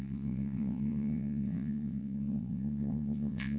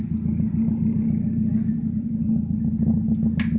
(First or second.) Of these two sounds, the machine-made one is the first